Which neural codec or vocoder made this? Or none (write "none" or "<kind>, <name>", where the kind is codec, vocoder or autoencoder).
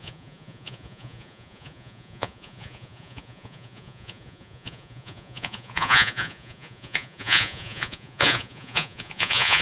vocoder, Vocos